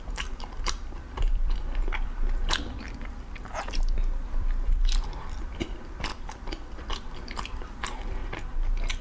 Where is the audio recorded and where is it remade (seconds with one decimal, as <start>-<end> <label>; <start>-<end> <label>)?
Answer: 0.0-6.1 remade; 6.1-6.9 recorded; 6.9-8.2 remade; 8.2-9.0 recorded